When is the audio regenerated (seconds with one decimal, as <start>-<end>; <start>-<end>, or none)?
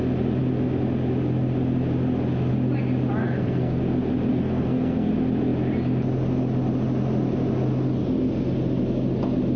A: 3.2-3.8; 4.3-5.1